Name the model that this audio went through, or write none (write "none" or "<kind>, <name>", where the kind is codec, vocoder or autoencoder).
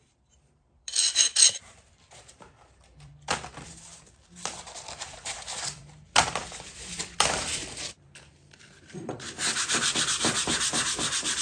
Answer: vocoder, BigVGAN v2